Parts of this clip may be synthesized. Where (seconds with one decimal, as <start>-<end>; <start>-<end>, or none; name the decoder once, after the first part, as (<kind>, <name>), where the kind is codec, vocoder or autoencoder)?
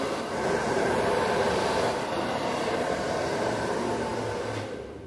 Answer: 0.6-3.6 (vocoder, BigVGAN v2)